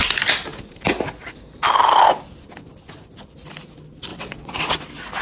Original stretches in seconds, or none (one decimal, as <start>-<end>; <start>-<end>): 0.0-4.1; 4.7-5.2